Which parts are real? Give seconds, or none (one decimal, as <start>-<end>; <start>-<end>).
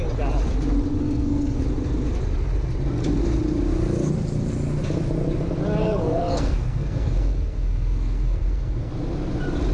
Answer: 0.0-1.0; 1.6-5.8; 8.9-9.7